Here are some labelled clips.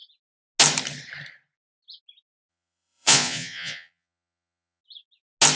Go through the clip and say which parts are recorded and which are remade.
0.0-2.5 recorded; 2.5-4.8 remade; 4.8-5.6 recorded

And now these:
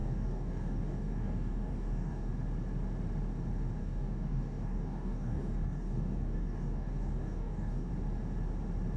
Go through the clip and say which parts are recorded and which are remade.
0.0-2.3 remade; 2.3-3.8 recorded; 3.8-7.9 remade; 7.9-9.0 recorded